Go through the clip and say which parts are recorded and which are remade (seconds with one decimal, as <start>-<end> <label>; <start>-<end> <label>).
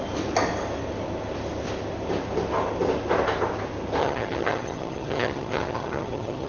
0.0-4.0 recorded; 4.0-6.5 remade